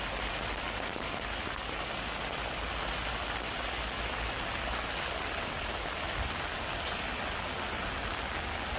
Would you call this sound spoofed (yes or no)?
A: no